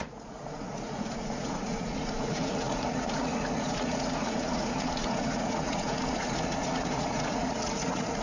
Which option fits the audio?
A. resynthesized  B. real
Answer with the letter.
A